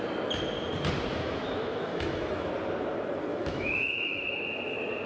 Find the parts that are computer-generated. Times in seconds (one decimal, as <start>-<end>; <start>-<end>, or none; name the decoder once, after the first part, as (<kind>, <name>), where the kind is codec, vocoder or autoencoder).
1.1-2.5 (autoencoder, DAC-VAE); 3.3-4.2